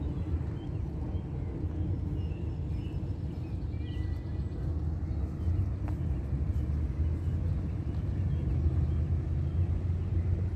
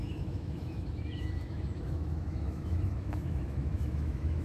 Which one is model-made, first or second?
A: second